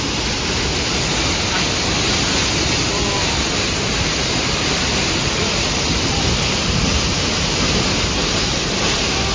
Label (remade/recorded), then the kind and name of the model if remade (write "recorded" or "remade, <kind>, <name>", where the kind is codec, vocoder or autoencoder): recorded